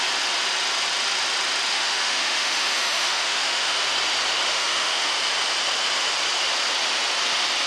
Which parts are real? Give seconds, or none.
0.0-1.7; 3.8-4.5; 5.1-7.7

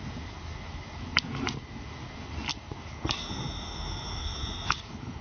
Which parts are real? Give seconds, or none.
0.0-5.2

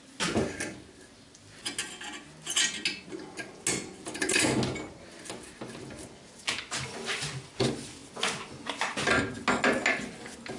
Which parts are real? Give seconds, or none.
0.0-10.6

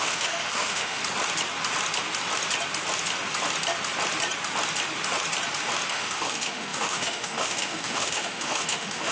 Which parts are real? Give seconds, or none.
1.0-5.9